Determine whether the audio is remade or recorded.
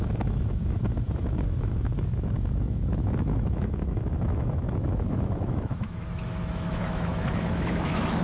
remade